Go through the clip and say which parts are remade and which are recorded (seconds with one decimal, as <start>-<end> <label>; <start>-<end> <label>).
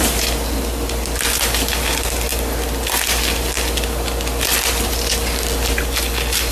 0.0-6.5 recorded